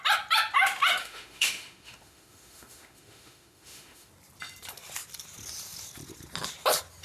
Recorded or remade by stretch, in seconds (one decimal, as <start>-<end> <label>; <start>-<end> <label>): 0.0-1.0 recorded; 1.0-4.1 remade; 4.1-7.0 recorded

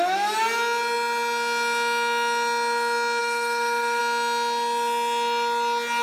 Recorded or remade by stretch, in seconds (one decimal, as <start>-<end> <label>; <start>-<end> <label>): 0.0-3.2 recorded; 3.2-4.0 remade; 4.0-6.0 recorded

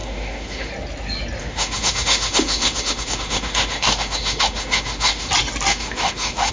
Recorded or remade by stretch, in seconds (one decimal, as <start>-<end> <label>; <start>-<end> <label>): 0.0-0.7 remade; 0.7-1.4 recorded; 1.4-5.3 remade; 5.3-5.7 recorded; 5.7-6.5 remade

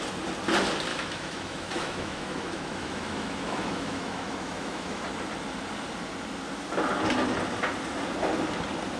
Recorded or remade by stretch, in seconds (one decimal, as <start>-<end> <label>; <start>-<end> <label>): 0.0-0.9 recorded; 0.9-5.0 remade; 5.0-9.0 recorded

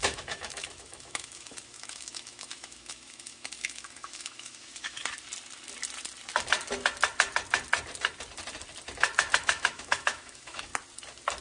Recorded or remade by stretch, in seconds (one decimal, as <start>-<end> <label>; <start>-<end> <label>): 0.0-5.0 remade; 5.0-9.4 recorded; 9.4-10.7 remade; 10.7-11.4 recorded

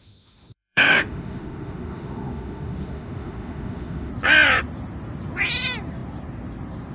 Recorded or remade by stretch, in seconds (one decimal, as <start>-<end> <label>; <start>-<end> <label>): 0.0-4.1 remade; 4.1-6.9 recorded

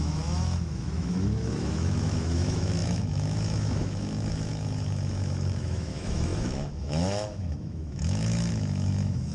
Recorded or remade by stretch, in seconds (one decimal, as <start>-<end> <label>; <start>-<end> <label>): 0.0-9.3 remade

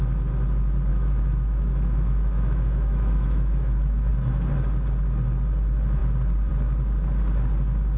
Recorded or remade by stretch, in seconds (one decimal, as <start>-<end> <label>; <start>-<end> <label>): 0.0-0.9 recorded; 0.9-4.1 remade; 4.1-8.0 recorded